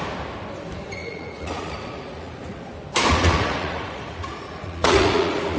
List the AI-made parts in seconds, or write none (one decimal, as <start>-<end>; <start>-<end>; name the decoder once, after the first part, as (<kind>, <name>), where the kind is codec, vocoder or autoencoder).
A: 1.0-2.6 (vocoder, Vocos); 3.1-5.6